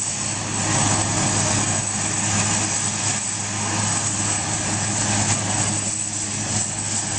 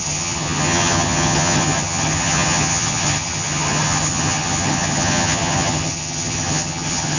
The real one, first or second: first